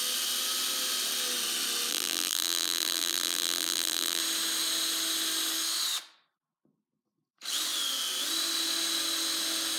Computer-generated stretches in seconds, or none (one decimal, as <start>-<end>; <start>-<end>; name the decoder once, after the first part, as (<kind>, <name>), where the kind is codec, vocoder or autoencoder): 1.9-4.2 (vocoder, BigVGAN v2)